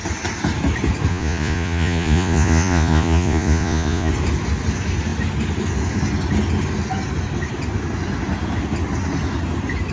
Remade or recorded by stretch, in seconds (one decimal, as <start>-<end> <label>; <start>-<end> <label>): 0.0-1.1 recorded; 1.1-4.1 remade; 4.1-9.9 recorded